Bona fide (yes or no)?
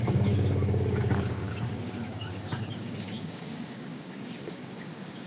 no